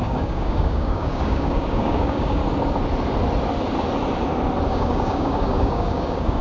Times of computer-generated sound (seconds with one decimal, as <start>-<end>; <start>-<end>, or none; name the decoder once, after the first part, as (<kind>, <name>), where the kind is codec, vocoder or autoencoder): 0.0-2.4 (codec, DAC); 4.7-6.4